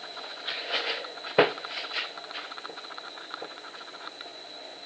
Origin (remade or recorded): remade